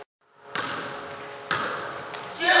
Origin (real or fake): real